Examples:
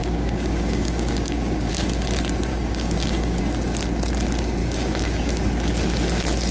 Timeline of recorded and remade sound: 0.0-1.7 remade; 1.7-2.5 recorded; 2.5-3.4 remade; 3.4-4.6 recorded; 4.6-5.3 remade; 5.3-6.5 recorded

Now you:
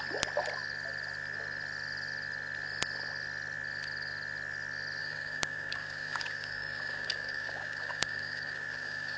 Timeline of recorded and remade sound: 0.0-5.0 recorded; 5.0-9.2 remade

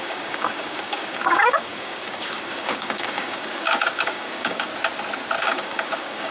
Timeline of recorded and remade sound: 0.0-4.7 remade; 4.7-5.4 recorded; 5.4-6.3 remade